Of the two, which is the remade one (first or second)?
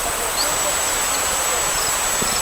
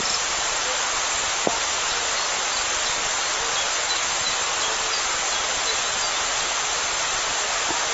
first